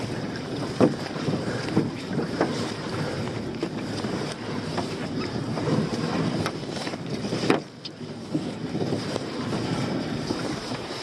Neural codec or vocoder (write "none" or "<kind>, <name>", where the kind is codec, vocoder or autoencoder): vocoder, BigVGAN v2